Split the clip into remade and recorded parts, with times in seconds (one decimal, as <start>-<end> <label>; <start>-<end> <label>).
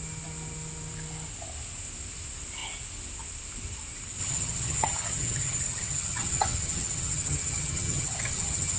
0.0-4.2 recorded; 4.2-8.8 remade